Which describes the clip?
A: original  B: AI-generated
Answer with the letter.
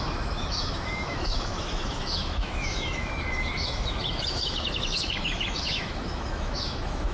B